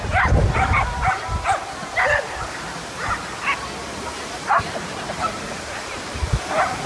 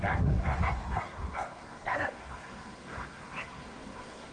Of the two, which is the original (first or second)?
first